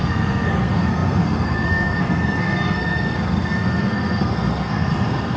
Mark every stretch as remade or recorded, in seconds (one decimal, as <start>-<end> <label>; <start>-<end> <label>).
0.0-5.4 remade